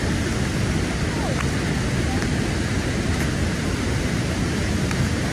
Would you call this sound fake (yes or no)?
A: no